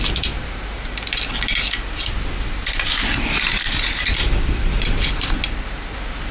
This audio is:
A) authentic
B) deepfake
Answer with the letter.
A